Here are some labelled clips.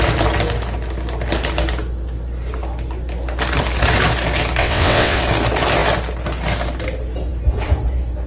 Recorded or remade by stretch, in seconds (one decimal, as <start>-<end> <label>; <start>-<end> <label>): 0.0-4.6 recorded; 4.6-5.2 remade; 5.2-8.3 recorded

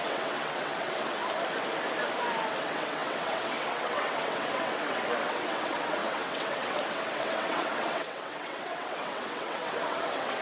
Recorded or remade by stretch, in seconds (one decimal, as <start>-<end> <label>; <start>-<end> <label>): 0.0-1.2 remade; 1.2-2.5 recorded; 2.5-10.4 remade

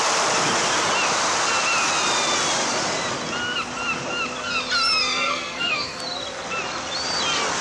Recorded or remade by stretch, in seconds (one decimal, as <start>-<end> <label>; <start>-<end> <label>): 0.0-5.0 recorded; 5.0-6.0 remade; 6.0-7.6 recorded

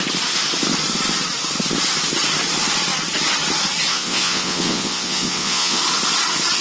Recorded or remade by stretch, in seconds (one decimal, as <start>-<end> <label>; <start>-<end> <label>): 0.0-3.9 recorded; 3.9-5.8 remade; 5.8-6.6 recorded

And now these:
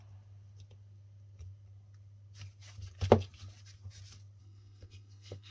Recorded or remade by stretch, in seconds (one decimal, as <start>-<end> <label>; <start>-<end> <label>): 0.0-4.4 recorded; 4.4-5.5 remade